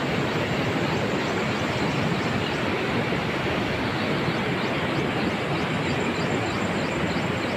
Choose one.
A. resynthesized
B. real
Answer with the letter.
B